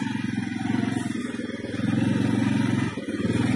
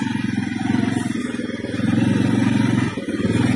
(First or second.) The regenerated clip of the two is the second